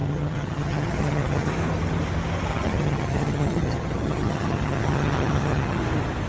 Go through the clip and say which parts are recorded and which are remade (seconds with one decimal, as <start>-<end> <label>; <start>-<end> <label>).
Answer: 0.0-1.5 remade; 1.5-2.5 recorded; 2.5-5.8 remade; 5.8-6.3 recorded